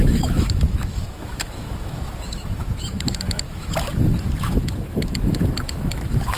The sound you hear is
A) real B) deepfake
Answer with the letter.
B